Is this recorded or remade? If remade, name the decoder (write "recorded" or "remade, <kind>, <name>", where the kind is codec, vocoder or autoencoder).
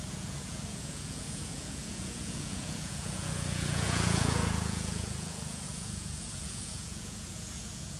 remade, vocoder, Vocos